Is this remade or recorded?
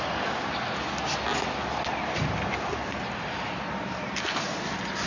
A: recorded